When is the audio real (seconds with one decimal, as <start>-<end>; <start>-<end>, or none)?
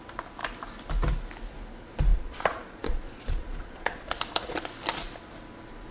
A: 0.0-2.1; 4.2-5.9